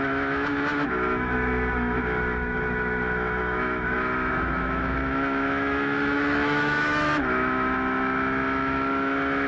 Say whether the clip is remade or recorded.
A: remade